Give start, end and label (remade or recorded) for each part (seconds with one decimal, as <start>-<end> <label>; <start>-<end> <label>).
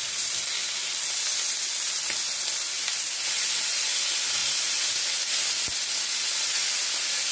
0.0-7.3 recorded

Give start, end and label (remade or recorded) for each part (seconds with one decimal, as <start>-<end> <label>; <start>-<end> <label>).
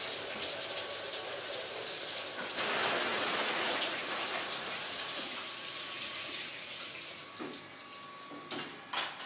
0.0-3.1 recorded; 3.1-7.2 remade; 7.2-9.3 recorded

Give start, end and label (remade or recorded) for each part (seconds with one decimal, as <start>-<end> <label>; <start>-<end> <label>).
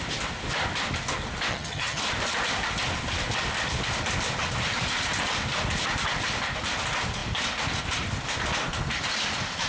0.0-1.5 recorded; 1.5-2.0 remade; 2.0-9.7 recorded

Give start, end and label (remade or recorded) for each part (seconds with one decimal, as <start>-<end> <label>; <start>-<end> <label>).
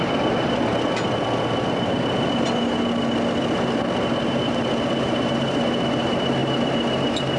0.0-7.4 recorded